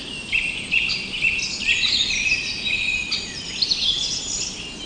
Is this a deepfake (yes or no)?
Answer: no